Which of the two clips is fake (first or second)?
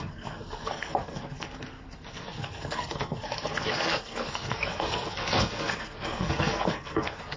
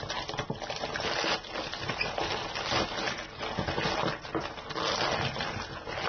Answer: first